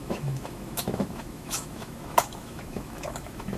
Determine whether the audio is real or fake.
fake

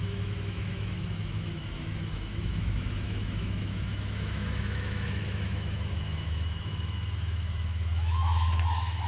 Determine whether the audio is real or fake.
fake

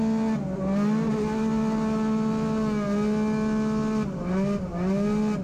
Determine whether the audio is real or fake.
real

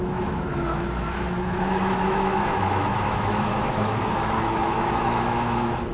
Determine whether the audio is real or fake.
fake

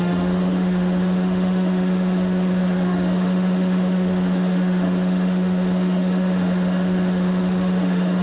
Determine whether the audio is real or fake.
fake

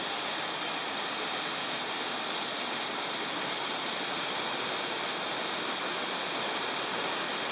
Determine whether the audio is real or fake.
real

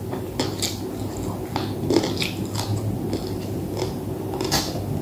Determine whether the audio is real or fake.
real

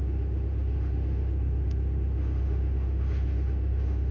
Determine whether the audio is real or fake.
fake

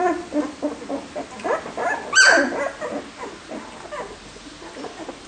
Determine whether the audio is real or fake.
real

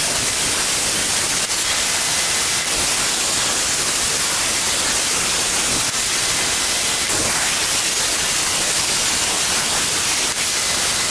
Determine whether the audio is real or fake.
real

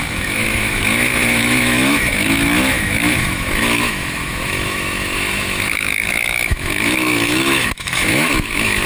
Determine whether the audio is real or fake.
fake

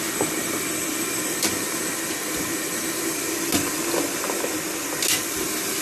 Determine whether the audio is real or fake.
real